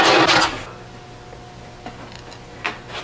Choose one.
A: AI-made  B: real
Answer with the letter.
B